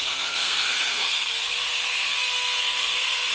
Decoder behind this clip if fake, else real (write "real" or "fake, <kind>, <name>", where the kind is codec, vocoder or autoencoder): fake, codec, SNAC